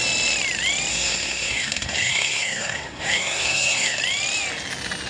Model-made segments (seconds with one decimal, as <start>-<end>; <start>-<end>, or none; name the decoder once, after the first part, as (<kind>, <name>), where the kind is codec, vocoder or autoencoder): 0.9-4.0 (codec, SNAC)